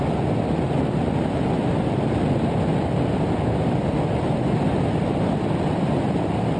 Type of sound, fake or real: real